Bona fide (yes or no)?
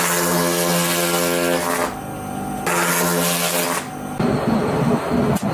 yes